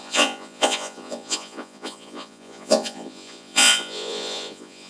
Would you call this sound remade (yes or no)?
yes